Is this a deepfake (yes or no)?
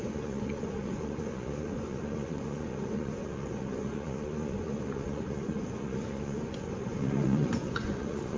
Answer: yes